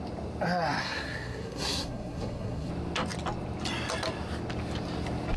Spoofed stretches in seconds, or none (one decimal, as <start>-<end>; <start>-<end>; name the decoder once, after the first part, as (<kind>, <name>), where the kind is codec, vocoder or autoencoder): 0.8-2.7 (codec, SNAC)